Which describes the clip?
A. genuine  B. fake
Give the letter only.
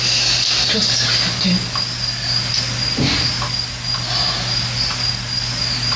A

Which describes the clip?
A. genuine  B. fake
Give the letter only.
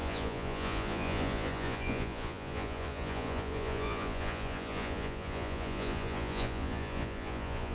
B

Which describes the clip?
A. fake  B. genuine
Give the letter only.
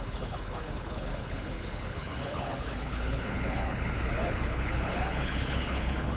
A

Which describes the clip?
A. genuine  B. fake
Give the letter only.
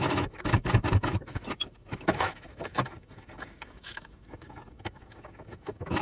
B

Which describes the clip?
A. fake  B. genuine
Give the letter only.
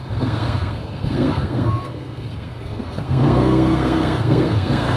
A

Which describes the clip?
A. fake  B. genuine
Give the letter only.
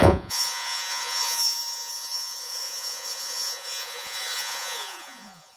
A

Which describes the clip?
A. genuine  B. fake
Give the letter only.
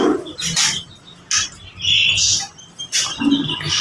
A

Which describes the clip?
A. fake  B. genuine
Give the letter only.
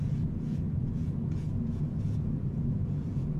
A